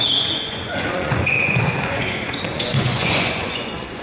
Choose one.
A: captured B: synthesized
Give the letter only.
B